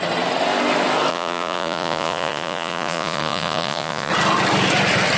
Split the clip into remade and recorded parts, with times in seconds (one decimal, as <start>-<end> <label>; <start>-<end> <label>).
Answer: 0.0-1.1 recorded; 1.1-4.1 remade; 4.1-5.2 recorded